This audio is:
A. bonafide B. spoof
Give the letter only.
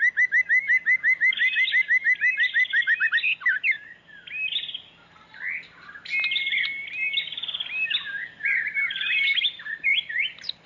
A